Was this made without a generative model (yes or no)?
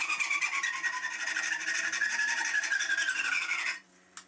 yes